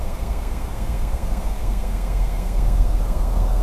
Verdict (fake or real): fake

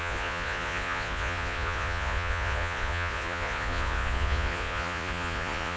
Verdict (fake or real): fake